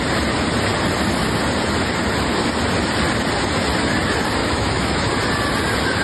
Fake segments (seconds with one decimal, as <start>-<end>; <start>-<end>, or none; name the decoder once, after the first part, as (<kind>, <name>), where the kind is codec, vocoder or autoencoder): 4.4-5.1 (autoencoder, DAC-VAE)